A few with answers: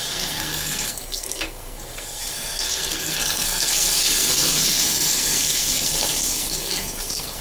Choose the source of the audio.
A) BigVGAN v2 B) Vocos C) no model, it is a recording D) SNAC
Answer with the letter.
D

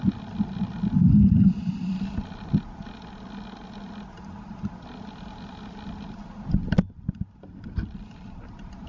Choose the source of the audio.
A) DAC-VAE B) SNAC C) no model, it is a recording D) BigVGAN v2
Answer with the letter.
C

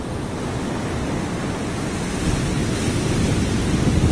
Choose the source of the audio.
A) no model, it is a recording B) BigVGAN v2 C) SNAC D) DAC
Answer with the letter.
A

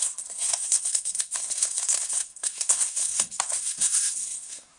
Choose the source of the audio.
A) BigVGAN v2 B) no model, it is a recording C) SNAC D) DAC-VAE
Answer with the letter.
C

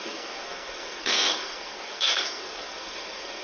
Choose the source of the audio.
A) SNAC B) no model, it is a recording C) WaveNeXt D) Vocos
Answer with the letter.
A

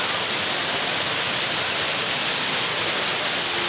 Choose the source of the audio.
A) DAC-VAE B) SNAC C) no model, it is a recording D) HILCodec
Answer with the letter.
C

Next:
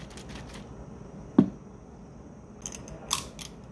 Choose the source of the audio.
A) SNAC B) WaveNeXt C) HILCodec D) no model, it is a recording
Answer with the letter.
D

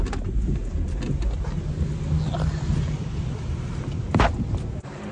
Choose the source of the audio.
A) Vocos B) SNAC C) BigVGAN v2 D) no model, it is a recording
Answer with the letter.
D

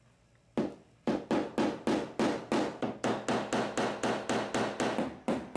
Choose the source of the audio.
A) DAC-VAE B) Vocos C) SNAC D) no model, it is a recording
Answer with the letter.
D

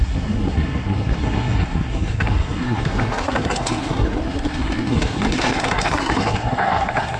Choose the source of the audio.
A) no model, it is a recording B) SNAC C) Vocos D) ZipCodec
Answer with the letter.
B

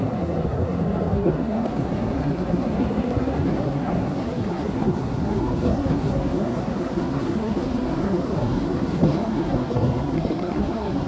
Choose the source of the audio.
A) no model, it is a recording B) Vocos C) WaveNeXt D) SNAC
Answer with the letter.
D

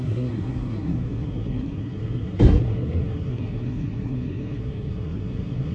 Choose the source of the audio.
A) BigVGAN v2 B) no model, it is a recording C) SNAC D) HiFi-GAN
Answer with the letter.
C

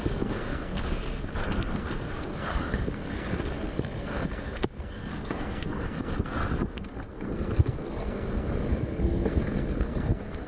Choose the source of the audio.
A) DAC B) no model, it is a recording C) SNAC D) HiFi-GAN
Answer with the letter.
C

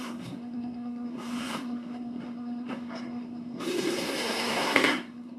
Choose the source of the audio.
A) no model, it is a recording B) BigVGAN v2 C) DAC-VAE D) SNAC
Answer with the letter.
D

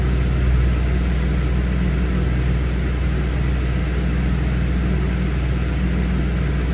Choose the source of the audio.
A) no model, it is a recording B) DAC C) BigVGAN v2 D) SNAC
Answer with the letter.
A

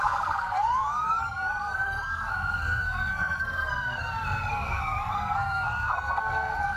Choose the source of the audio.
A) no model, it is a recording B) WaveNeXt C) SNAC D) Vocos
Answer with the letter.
C